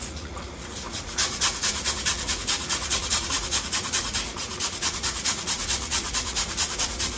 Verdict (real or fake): fake